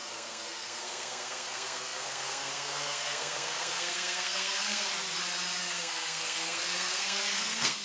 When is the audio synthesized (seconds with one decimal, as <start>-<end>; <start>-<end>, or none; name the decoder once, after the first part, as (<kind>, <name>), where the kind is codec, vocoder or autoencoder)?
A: 0.0-4.9 (codec, SNAC); 5.6-7.8